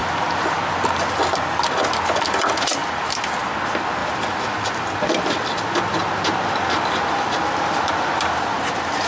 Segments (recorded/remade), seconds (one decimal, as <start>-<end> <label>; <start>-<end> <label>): 0.0-1.2 remade; 1.2-2.8 recorded; 2.8-3.4 remade; 3.4-4.0 recorded; 4.0-8.4 remade; 8.4-9.1 recorded